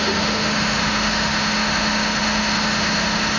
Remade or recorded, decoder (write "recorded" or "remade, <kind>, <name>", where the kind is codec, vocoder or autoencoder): remade, autoencoder, DAC-VAE